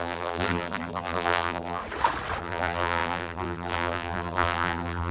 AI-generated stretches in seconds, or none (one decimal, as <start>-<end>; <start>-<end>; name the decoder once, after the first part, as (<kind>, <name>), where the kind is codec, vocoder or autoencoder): 0.0-1.8 (vocoder, BigVGAN v2); 2.4-5.1